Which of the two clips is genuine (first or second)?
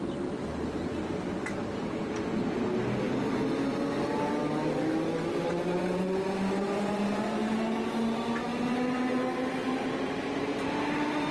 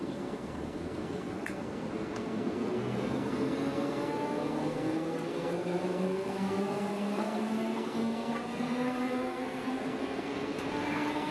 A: first